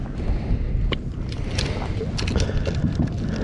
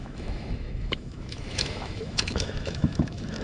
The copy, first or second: second